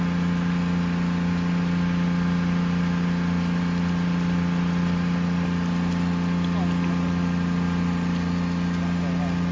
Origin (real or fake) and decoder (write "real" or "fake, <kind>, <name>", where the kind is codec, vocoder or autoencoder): real